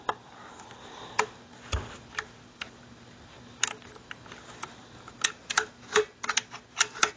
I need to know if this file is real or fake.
real